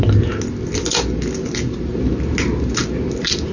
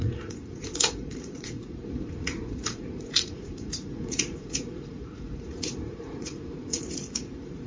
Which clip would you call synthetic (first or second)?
second